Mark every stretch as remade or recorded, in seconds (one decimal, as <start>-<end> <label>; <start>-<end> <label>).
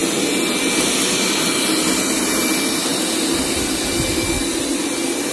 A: 0.0-5.3 recorded